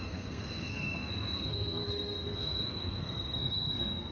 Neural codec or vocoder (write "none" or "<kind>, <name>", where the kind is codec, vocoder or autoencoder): codec, SNAC